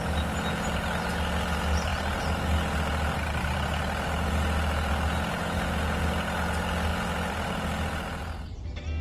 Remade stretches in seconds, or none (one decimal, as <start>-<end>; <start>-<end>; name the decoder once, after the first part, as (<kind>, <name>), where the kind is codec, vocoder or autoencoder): none